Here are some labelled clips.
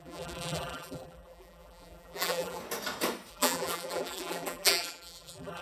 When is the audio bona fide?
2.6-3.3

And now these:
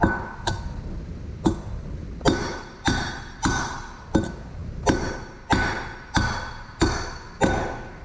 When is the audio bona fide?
0.0-2.5; 4.0-8.0

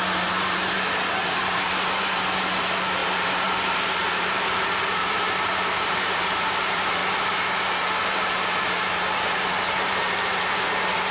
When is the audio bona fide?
7.0-7.6